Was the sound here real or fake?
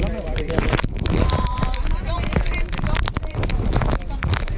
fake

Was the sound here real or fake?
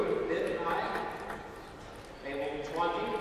real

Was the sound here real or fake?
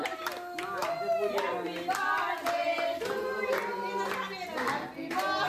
real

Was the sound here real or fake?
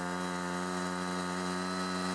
real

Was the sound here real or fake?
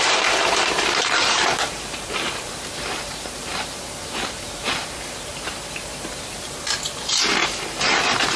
fake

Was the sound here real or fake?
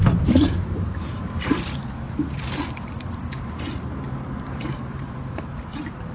fake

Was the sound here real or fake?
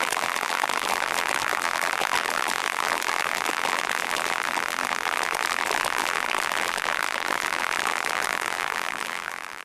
fake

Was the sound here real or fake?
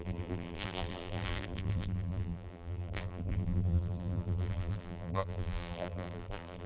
fake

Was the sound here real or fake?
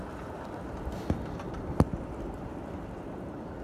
fake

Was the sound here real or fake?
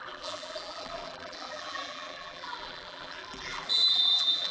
fake